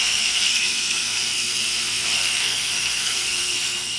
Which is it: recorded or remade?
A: remade